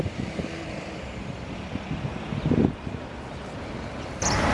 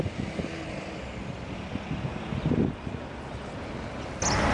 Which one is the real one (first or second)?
second